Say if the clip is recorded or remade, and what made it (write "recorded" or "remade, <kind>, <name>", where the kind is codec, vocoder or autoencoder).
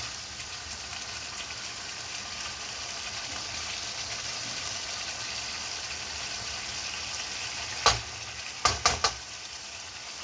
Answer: recorded